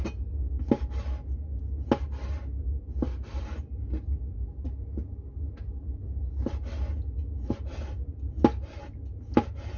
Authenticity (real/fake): real